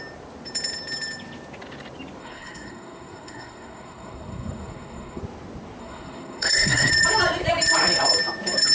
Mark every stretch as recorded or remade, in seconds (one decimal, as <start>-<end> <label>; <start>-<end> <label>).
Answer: 0.0-2.2 recorded; 2.2-5.2 remade; 5.2-5.8 recorded; 5.8-6.9 remade; 6.9-8.7 recorded